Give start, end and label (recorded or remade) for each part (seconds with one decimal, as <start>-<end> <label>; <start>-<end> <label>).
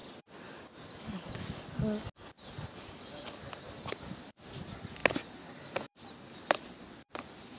0.0-7.6 recorded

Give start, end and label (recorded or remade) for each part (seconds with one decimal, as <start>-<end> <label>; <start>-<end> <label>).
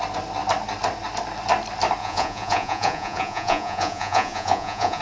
0.0-2.0 recorded; 2.0-5.0 remade